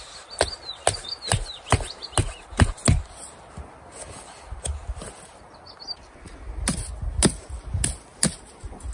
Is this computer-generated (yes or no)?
no